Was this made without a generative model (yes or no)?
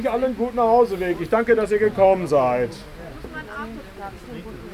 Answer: yes